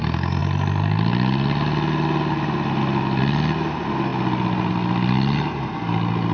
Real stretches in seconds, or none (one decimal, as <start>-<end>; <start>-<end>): 0.0-6.3